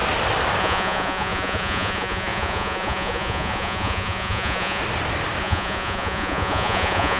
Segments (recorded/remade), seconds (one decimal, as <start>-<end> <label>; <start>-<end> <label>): 0.0-0.6 recorded; 0.6-4.8 remade; 4.8-5.4 recorded; 5.4-7.2 remade

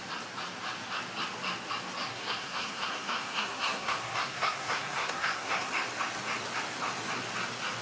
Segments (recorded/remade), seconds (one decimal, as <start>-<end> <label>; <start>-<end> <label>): 0.0-2.1 recorded; 2.1-5.7 remade; 5.7-7.8 recorded